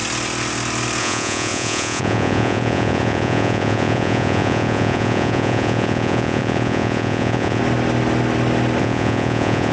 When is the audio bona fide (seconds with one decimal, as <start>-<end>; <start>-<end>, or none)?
0.0-1.0; 7.6-8.8